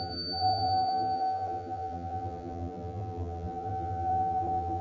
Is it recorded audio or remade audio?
remade